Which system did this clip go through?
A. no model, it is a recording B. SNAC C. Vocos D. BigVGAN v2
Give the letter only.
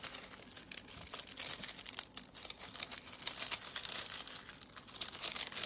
A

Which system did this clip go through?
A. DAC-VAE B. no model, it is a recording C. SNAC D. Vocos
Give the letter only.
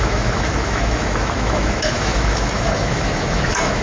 A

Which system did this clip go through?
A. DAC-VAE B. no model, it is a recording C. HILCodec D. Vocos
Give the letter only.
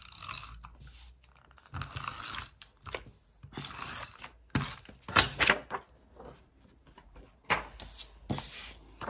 B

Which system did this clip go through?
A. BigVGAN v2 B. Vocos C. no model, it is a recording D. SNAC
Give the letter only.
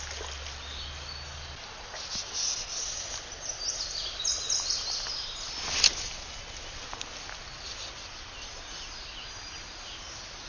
C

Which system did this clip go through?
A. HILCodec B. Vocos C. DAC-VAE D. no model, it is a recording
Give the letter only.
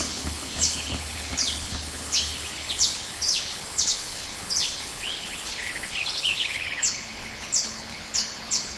A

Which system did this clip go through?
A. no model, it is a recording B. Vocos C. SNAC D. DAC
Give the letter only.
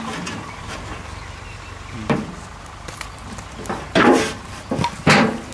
A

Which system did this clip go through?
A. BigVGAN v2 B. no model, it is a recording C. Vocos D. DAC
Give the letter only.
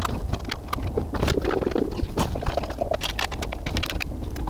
B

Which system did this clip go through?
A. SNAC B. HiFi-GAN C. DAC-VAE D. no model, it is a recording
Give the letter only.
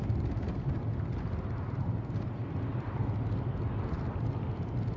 D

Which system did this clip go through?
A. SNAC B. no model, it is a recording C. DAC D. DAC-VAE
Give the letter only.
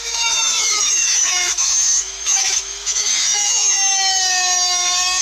D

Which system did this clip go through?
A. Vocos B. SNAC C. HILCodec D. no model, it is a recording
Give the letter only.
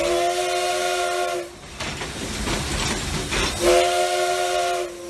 D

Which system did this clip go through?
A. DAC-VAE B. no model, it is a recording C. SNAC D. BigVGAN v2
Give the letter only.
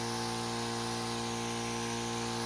B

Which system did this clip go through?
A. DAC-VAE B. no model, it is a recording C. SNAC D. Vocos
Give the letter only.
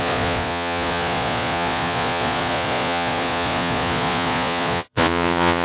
D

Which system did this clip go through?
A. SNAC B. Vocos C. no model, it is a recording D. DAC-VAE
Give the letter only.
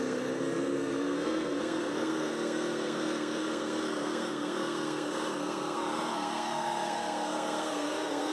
A